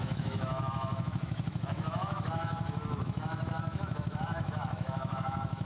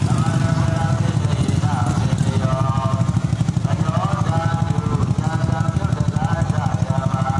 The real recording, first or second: second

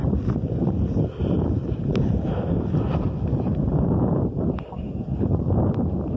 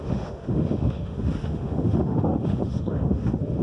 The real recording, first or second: first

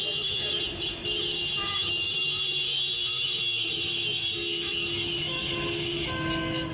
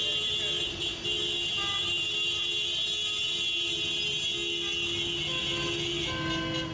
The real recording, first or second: second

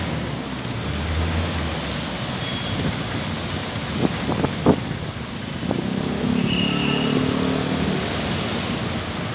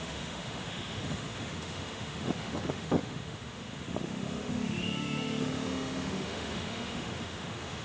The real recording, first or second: first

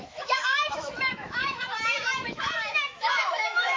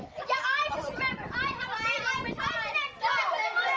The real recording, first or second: second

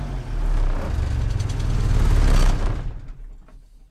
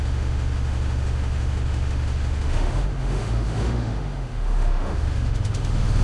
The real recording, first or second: first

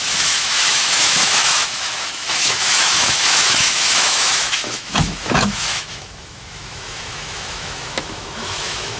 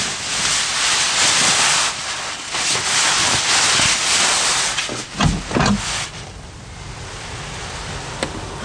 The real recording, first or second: second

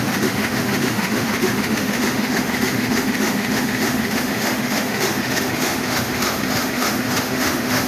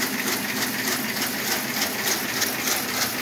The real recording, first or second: second